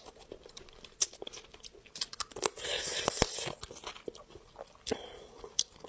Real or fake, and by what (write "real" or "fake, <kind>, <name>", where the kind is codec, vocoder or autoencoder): real